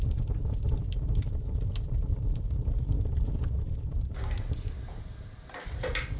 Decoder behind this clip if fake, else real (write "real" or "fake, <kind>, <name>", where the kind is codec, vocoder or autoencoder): real